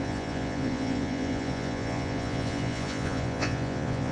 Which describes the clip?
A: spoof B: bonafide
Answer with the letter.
A